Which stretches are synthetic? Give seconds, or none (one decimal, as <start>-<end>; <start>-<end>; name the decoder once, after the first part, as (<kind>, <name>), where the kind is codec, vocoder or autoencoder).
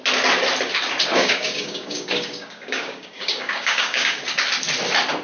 1.1-4.2 (codec, DAC)